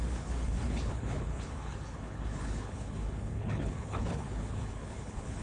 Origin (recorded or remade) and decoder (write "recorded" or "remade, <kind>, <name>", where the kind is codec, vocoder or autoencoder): remade, codec, HILCodec